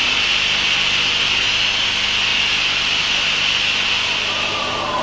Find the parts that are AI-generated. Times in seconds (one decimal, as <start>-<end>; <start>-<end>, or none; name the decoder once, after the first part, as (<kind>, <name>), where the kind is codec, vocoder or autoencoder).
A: none